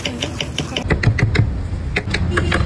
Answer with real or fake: real